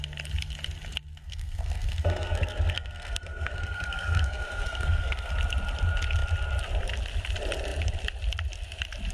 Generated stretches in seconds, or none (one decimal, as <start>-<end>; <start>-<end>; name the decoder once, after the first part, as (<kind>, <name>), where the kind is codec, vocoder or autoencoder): 1.2-5.3 (codec, SNAC)